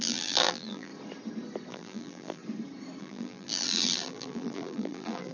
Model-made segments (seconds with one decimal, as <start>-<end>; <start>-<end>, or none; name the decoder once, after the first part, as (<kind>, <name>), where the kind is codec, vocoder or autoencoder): 0.0-0.9 (vocoder, BigVGAN v2); 1.7-2.4; 3.0-5.3